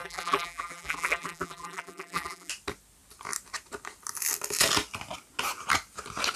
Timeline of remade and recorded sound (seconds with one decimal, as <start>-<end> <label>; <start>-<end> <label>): 0.0-2.5 remade; 2.5-6.4 recorded